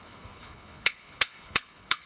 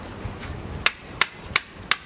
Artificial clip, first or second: first